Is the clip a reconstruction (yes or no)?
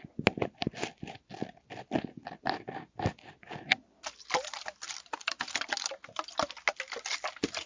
no